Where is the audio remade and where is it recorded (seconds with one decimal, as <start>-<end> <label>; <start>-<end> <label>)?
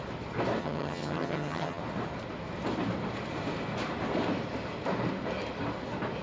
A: 0.0-0.6 recorded; 0.6-1.8 remade; 1.8-6.2 recorded